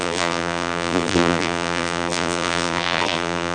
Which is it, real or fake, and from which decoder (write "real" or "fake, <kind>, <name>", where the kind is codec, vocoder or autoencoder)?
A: fake, vocoder, BigVGAN v2